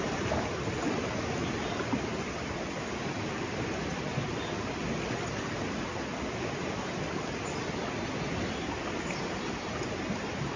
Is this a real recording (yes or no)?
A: yes